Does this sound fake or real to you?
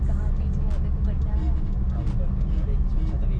real